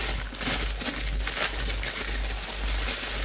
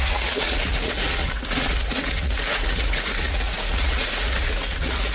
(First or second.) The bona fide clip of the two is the first